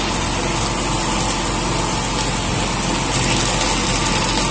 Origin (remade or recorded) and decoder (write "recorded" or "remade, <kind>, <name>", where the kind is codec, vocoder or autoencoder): recorded